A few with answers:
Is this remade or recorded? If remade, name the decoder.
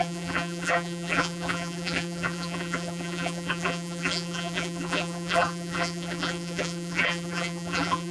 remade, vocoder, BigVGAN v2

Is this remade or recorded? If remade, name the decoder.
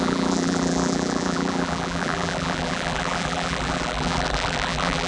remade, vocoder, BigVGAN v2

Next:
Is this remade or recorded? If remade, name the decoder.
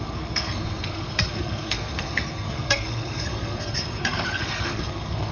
remade, codec, SNAC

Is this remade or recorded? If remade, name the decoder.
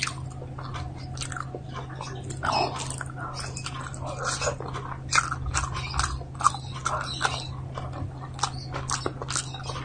recorded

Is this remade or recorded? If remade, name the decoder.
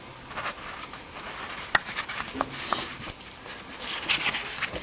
recorded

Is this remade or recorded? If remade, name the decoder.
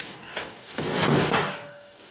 remade, codec, DAC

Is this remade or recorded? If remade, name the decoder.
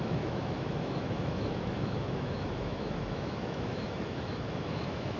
remade, autoencoder, DAC-VAE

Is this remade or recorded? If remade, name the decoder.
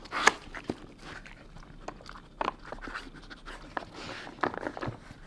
recorded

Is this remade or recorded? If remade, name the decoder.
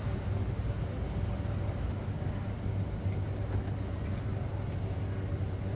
recorded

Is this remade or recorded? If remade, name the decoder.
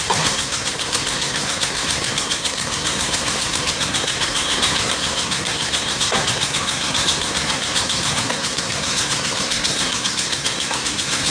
remade, codec, SNAC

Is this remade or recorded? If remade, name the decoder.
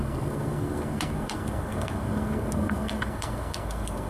remade, codec, SNAC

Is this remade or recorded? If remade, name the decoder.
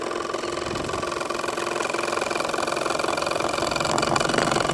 recorded